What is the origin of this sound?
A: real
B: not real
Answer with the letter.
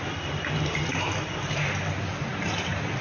A